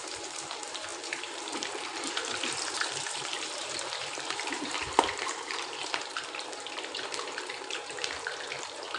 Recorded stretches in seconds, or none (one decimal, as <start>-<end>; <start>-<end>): none